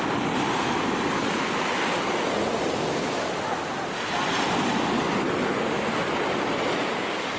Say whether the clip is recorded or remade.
recorded